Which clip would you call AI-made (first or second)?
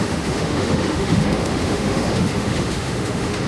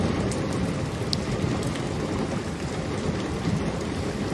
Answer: first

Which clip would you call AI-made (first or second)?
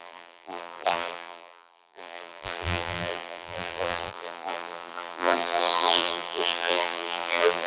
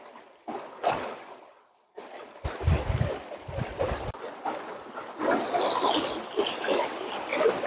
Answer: first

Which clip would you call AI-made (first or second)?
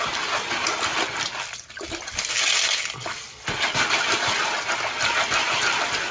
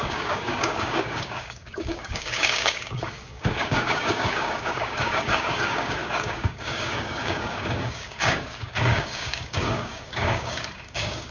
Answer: second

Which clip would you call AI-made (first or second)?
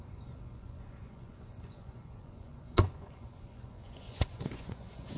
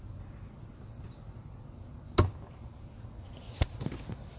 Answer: first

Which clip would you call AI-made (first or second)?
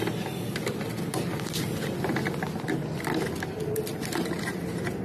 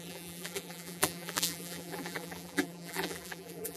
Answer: second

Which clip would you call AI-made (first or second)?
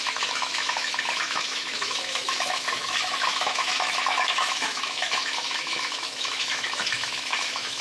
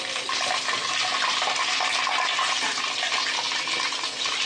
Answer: first